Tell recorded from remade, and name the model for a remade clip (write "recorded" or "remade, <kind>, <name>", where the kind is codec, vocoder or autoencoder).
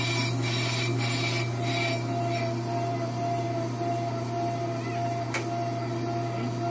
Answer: recorded